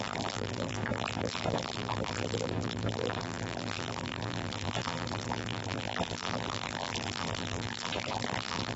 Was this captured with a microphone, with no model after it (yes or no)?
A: no